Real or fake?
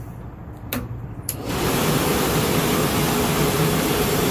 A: fake